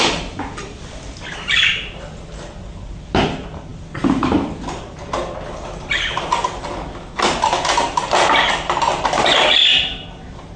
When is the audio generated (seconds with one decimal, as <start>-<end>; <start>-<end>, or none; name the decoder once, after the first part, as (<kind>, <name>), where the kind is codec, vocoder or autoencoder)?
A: none